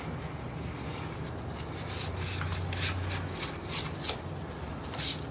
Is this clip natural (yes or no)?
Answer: yes